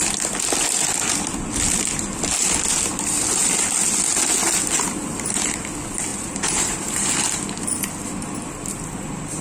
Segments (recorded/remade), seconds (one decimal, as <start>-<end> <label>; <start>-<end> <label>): 0.0-6.1 recorded; 6.1-7.1 remade; 7.1-9.4 recorded